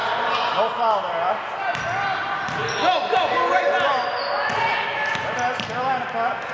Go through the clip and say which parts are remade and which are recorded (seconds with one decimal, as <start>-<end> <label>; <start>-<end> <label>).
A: 0.0-6.5 recorded